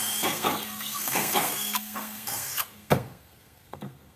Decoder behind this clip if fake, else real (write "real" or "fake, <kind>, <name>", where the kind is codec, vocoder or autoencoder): fake, codec, SNAC